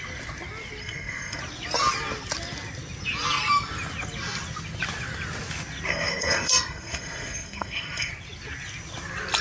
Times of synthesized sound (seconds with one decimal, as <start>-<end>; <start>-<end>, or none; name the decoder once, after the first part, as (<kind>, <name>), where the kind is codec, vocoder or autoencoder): 0.8-1.4 (codec, SNAC); 5.9-8.1